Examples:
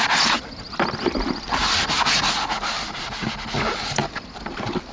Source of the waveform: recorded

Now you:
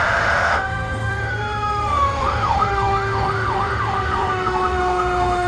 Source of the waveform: remade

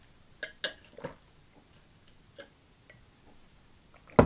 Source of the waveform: recorded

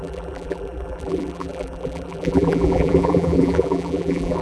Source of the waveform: remade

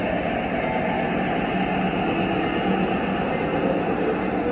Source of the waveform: recorded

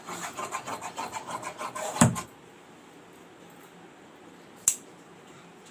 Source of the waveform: recorded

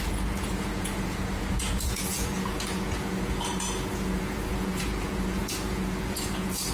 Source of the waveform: remade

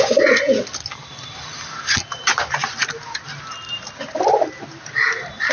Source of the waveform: recorded